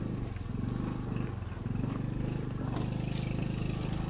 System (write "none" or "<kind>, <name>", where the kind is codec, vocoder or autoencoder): none